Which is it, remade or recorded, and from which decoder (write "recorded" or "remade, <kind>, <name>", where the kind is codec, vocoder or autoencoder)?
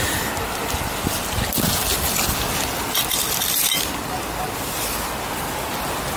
recorded